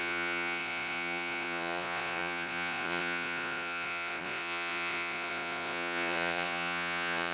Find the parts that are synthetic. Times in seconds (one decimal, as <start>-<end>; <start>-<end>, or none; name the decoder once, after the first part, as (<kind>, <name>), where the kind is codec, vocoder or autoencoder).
0.0-7.3 (vocoder, Vocos)